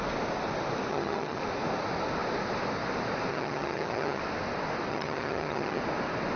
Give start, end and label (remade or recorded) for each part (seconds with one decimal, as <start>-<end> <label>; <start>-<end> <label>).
0.0-0.9 recorded; 0.9-1.4 remade; 1.4-3.3 recorded; 3.3-4.2 remade; 4.2-4.9 recorded; 4.9-5.8 remade; 5.8-6.4 recorded